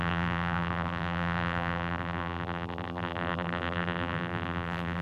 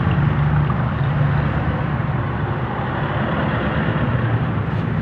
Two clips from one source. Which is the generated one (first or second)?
first